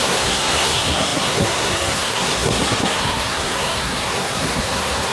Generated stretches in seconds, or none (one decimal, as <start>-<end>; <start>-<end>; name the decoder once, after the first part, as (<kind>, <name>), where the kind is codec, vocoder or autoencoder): 0.0-5.1 (codec, SNAC)